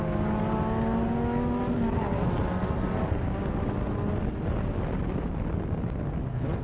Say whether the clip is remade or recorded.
recorded